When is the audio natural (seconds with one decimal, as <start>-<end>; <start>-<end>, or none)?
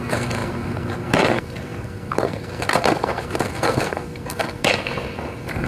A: none